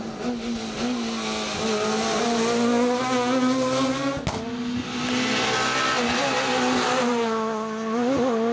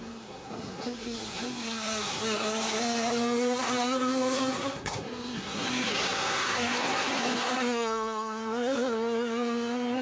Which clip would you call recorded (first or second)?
first